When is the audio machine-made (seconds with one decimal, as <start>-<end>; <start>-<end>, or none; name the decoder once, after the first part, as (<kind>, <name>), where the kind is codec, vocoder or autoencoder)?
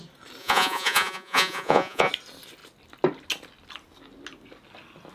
0.4-2.1 (vocoder, Vocos)